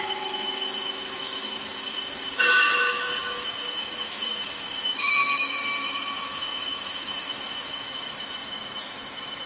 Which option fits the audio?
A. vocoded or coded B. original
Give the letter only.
A